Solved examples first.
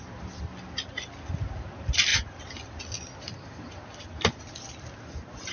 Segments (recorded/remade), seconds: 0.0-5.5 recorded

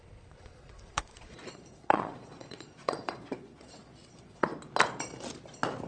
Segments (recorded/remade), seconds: 0.0-4.5 remade; 4.5-5.9 recorded

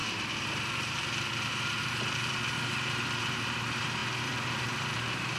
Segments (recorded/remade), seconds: 0.0-5.4 remade